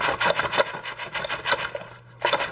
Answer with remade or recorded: recorded